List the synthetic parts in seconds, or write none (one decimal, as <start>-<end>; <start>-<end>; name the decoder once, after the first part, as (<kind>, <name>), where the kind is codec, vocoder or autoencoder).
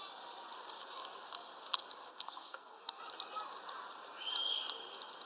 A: 2.1-3.0 (codec, SNAC)